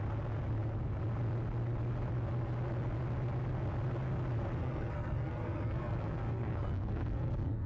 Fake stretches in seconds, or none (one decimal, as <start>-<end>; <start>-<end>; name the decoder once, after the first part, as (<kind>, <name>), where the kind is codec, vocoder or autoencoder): 4.6-7.7 (codec, SNAC)